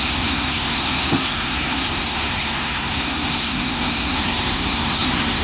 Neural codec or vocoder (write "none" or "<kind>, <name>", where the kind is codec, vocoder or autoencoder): codec, SNAC